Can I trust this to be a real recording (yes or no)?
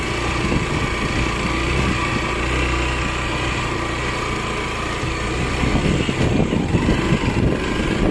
yes